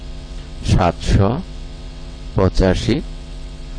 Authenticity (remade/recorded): remade